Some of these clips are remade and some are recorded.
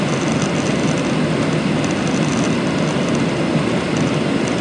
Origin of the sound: recorded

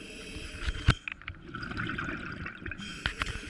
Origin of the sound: recorded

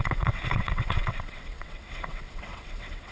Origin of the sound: remade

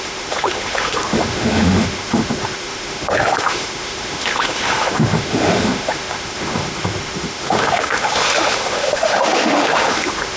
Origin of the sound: remade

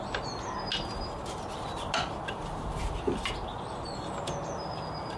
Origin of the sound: recorded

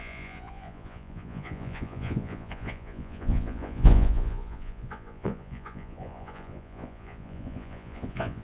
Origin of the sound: remade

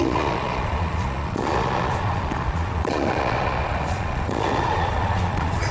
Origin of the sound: remade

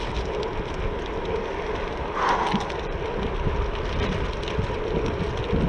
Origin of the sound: recorded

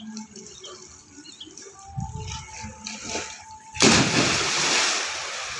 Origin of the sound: recorded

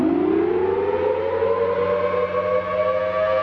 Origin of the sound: recorded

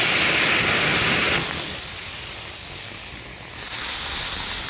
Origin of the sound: recorded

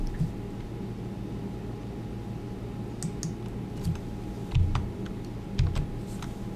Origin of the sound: recorded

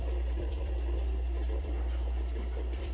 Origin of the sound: remade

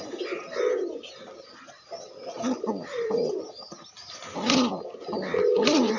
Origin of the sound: recorded